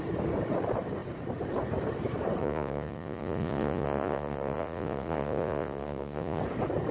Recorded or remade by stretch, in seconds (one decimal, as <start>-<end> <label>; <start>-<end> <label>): 0.0-2.4 recorded; 2.4-6.4 remade; 6.4-6.9 recorded